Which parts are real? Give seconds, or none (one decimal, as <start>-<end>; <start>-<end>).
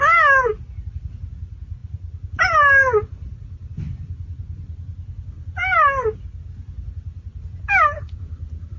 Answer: 0.0-8.8